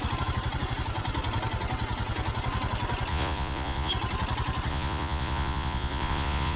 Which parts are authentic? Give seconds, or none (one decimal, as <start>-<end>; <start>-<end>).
0.0-3.1; 3.9-4.7